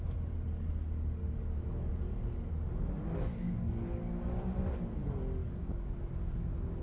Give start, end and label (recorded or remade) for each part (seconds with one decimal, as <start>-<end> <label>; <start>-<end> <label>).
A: 0.0-1.2 recorded; 1.2-1.9 remade; 1.9-3.3 recorded; 3.3-4.0 remade; 4.0-5.4 recorded; 5.4-6.0 remade; 6.0-6.8 recorded